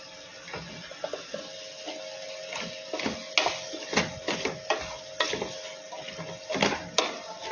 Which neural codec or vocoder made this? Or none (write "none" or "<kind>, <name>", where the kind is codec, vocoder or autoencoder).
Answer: none